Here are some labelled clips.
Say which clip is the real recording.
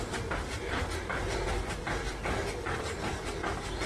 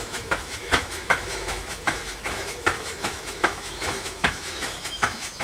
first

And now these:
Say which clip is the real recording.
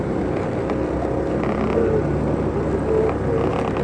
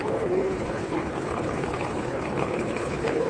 first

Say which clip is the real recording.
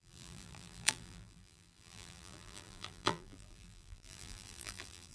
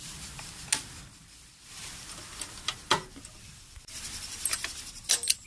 second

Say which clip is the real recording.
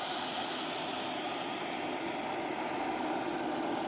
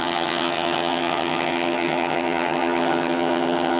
first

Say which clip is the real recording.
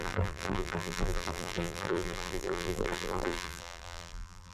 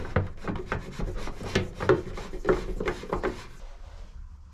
second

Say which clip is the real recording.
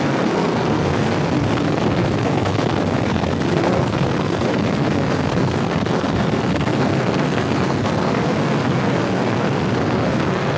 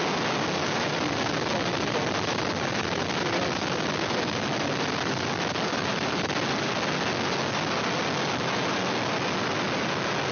second